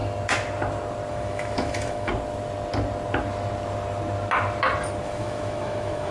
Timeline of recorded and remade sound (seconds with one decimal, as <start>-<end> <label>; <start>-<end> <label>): 0.0-1.1 recorded; 1.1-2.1 remade; 2.1-5.0 recorded; 5.0-6.1 remade